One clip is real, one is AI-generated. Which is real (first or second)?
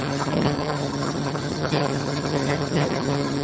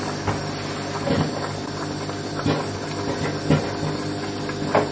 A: second